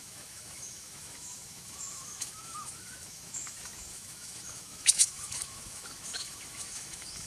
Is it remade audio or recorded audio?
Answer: remade